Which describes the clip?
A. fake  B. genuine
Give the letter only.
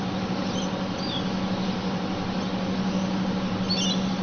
B